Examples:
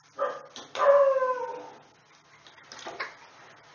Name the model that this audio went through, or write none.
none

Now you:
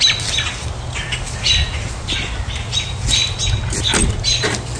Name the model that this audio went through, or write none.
none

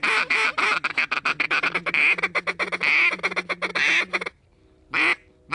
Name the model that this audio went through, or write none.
none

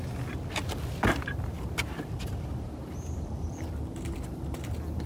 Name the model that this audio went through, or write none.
none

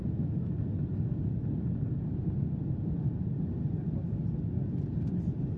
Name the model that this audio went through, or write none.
none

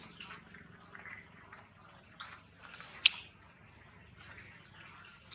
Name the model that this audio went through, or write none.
none